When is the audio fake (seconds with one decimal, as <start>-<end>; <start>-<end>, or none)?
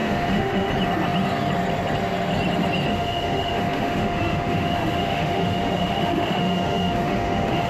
0.0-0.7; 2.9-7.7